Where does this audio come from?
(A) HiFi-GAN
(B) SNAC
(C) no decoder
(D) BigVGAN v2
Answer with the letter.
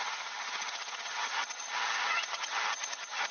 A